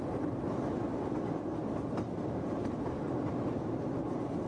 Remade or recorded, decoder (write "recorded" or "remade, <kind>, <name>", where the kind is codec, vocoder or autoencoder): recorded